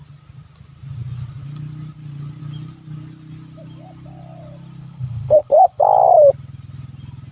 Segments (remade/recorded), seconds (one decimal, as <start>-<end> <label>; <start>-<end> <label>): 0.0-4.8 recorded; 4.8-5.8 remade; 5.8-7.3 recorded